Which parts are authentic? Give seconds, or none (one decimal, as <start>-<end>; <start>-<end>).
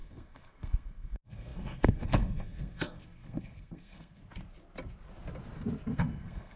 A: 4.2-5.9